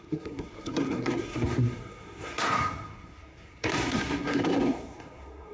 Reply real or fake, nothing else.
fake